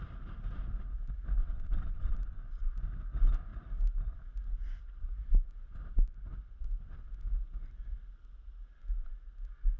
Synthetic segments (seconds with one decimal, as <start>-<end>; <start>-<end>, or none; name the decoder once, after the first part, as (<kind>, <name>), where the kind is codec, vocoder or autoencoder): 1.4-2.4 (vocoder, WaveNeXt)